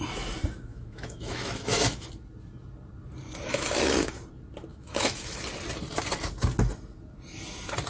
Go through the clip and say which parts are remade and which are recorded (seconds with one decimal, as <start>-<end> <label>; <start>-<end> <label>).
0.0-0.7 recorded; 0.7-2.1 remade; 2.1-3.5 recorded; 3.5-4.1 remade; 4.1-4.7 recorded; 4.7-5.4 remade; 5.4-7.9 recorded